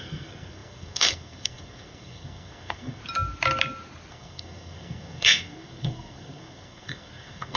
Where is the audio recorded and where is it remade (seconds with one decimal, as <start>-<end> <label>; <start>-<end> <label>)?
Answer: 0.0-3.0 remade; 3.0-4.1 recorded; 4.1-7.6 remade